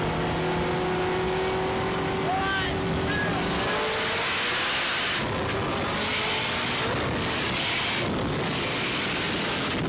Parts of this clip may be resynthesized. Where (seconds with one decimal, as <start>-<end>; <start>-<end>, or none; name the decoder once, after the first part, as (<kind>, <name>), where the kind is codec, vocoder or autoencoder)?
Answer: none